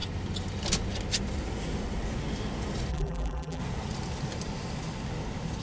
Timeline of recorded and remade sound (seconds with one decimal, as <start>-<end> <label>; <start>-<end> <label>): 0.0-2.9 recorded; 2.9-3.6 remade; 3.6-5.6 recorded